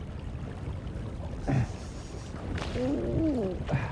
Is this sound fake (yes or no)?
no